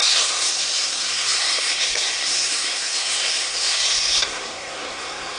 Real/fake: fake